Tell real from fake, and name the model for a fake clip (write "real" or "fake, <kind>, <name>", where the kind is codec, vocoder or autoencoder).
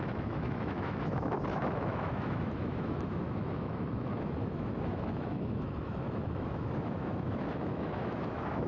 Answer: fake, autoencoder, DAC-VAE